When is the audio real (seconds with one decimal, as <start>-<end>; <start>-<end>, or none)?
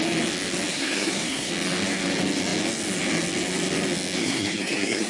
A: 0.0-0.7; 1.5-4.2